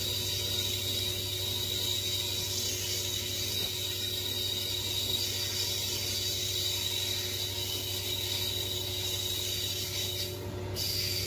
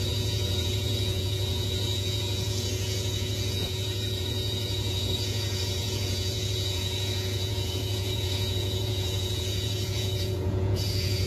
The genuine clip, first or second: first